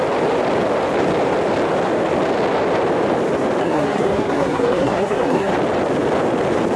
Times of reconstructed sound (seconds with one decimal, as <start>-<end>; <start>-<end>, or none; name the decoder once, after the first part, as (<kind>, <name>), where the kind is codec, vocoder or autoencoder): 3.6-5.5 (codec, SNAC)